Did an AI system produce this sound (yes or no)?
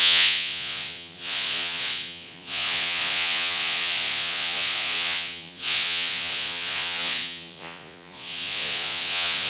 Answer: yes